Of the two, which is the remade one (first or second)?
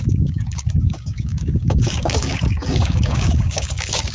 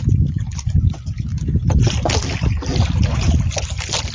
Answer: first